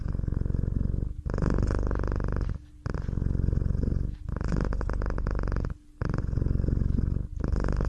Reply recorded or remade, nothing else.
recorded